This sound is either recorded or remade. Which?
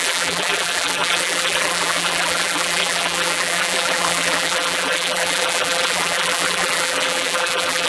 remade